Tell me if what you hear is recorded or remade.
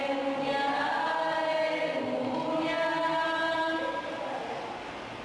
recorded